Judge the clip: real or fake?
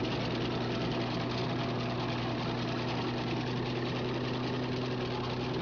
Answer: real